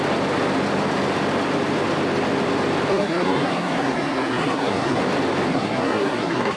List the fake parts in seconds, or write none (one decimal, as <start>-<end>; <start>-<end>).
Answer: 2.9-5.0; 5.5-6.6